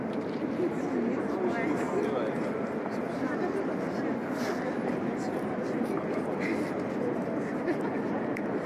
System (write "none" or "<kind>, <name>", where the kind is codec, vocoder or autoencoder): none